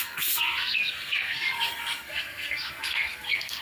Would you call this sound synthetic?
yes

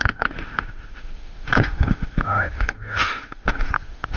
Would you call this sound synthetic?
yes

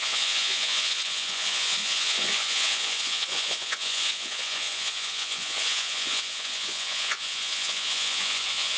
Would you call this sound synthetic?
yes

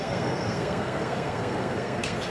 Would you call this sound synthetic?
yes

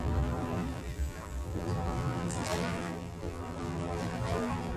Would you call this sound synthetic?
yes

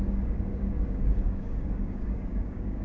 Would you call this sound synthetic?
yes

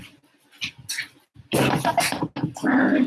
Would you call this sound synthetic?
no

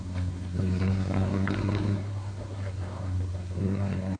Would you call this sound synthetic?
yes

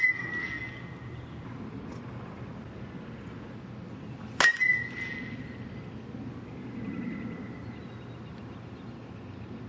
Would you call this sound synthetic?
no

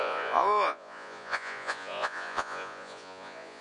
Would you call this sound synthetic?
yes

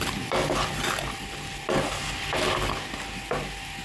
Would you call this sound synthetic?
no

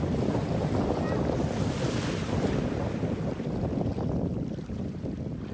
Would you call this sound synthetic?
no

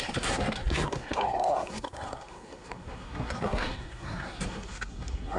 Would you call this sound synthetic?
yes